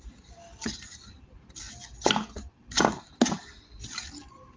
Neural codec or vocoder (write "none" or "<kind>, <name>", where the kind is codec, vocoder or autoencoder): none